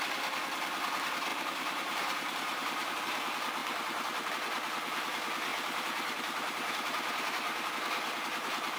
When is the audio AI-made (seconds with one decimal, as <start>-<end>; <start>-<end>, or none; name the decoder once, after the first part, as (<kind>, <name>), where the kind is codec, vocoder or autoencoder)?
1.3-3.0 (vocoder, BigVGAN v2); 5.5-7.7